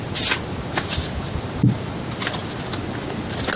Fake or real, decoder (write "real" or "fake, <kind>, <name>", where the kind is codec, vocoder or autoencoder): real